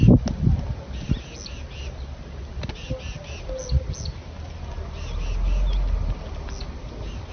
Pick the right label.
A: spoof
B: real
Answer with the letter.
B